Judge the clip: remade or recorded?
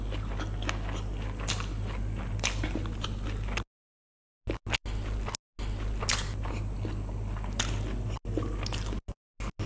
recorded